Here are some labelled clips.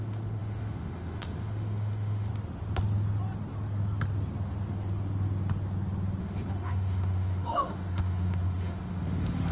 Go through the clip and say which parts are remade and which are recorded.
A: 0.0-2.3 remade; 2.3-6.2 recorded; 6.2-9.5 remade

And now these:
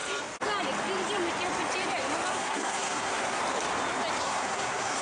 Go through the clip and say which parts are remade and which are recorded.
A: 0.0-2.3 recorded; 2.3-3.4 remade; 3.4-4.2 recorded; 4.2-5.0 remade

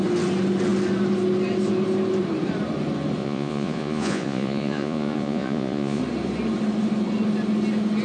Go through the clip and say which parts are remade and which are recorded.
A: 0.0-3.2 recorded; 3.2-6.0 remade; 6.0-8.0 recorded

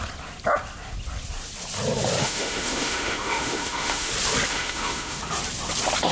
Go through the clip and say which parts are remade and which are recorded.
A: 0.0-2.2 recorded; 2.2-4.1 remade; 4.1-4.5 recorded; 4.5-5.2 remade; 5.2-6.1 recorded